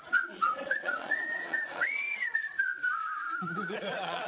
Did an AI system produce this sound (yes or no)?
yes